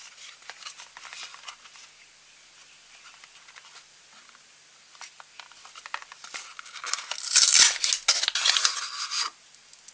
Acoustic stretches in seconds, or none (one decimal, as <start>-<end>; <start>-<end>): 0.0-9.9